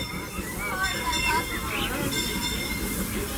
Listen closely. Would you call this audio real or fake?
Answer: real